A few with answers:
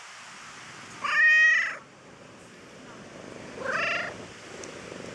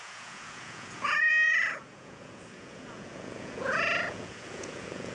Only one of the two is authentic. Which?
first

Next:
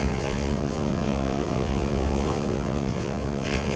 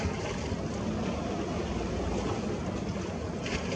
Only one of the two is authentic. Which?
second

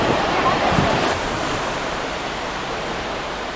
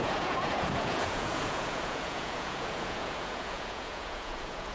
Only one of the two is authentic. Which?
first